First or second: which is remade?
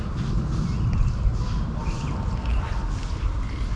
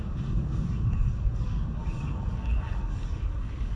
second